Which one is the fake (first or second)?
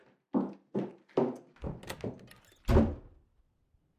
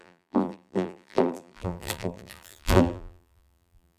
second